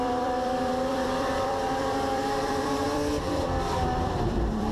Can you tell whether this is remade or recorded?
remade